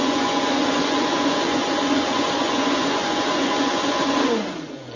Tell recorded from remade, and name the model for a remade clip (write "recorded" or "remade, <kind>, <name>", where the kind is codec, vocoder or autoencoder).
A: remade, vocoder, Vocos